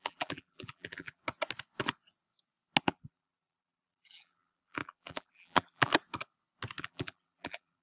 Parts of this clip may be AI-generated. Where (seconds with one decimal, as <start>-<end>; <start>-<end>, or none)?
0.0-1.2; 2.8-5.9; 6.8-7.8